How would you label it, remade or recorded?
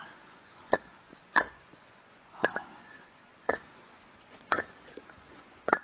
remade